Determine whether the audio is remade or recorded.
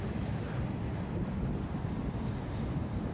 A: recorded